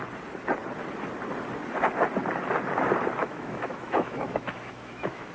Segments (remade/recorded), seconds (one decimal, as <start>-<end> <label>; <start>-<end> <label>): 0.0-3.2 recorded; 3.2-5.3 remade